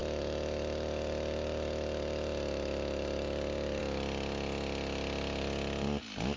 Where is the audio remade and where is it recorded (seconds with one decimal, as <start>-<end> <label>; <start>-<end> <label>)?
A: 0.0-3.8 remade; 3.8-6.4 recorded